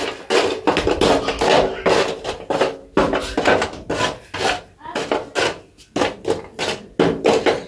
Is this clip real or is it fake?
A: real